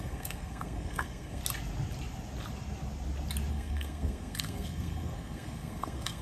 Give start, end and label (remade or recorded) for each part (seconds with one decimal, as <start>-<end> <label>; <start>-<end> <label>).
0.0-1.4 remade; 1.4-3.5 recorded; 3.5-6.2 remade